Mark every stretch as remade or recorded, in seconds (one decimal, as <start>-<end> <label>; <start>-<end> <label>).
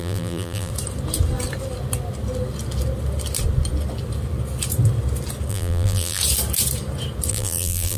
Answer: 0.0-0.7 remade; 0.7-5.5 recorded; 5.5-6.2 remade; 6.2-7.3 recorded; 7.3-8.0 remade